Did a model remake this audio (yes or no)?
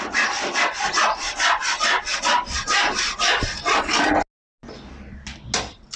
no